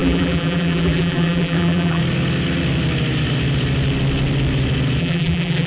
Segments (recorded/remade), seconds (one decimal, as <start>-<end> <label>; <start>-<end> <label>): 0.0-2.0 remade; 2.0-5.0 recorded; 5.0-5.7 remade